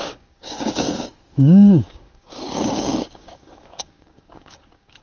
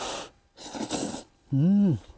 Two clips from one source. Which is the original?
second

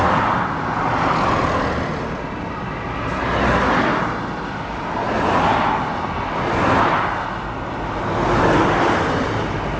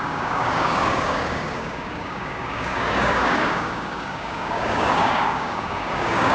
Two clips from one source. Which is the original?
first